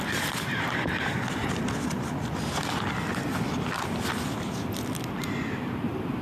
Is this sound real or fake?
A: real